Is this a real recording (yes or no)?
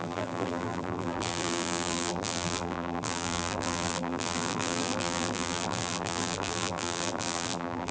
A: no